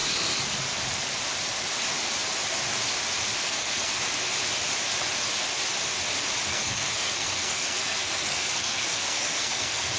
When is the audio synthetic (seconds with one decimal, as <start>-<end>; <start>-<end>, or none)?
3.4-4.0; 6.5-10.0